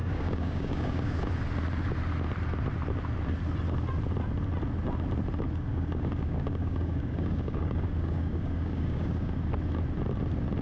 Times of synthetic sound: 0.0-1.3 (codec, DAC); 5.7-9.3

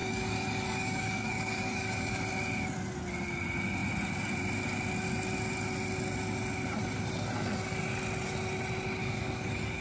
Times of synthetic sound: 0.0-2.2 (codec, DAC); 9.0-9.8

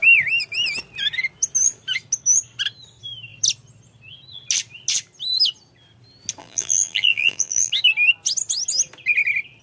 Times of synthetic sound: 6.4-7.7 (vocoder, BigVGAN v2)

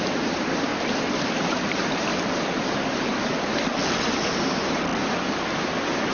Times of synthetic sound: 0.0-0.7 (vocoder, BigVGAN v2); 1.2-2.1; 4.0-4.9